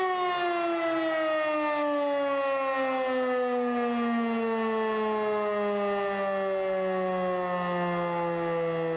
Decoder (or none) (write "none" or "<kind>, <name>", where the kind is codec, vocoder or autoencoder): none